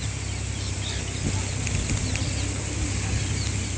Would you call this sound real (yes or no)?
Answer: yes